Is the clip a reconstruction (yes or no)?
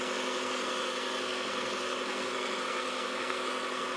yes